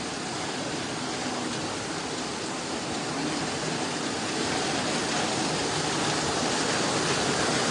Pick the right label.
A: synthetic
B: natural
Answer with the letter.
B